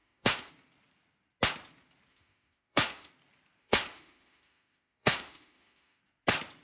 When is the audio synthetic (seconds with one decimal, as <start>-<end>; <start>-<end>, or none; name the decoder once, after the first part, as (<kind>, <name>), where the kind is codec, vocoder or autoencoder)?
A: 0.0-0.5 (autoencoder, DAC-VAE); 2.1-3.1; 3.6-6.0